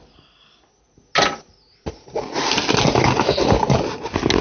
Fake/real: real